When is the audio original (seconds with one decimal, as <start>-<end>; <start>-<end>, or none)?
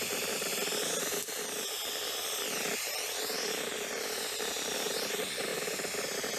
none